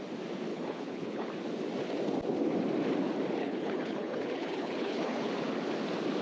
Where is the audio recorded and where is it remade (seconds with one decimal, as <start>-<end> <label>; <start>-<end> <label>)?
0.0-0.5 recorded; 0.5-1.3 remade; 1.3-3.4 recorded; 3.4-5.3 remade; 5.3-6.2 recorded